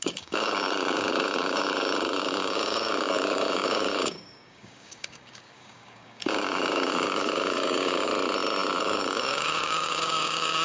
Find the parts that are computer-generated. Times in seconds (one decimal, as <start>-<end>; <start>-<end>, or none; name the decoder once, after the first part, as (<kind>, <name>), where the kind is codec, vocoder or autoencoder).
0.0-8.1 (codec, DAC); 8.8-10.6